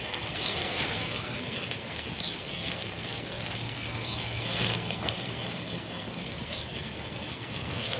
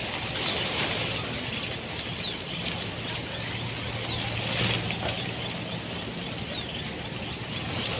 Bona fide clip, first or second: second